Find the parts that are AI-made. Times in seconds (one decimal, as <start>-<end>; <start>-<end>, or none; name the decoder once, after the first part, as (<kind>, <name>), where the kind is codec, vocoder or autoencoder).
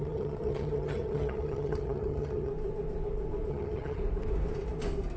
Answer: 0.0-2.5 (vocoder, HiFi-GAN); 3.5-4.0